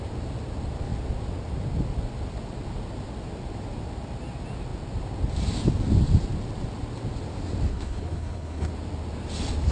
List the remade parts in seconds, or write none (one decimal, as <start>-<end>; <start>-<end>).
7.7-8.7